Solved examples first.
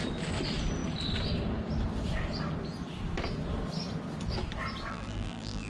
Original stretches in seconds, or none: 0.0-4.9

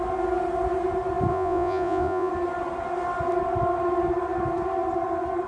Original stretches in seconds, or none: 0.0-1.3; 2.3-5.5

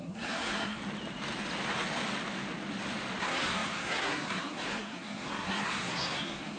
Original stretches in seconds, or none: 0.8-3.2